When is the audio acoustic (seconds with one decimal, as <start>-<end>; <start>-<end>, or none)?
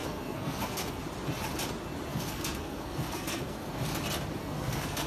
1.0-2.1; 3.7-4.4